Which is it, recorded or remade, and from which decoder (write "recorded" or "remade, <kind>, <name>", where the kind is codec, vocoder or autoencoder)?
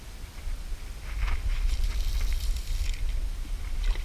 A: recorded